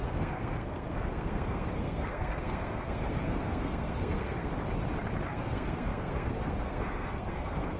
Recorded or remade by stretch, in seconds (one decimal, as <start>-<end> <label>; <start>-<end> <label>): 0.0-4.5 remade; 4.5-5.3 recorded; 5.3-7.8 remade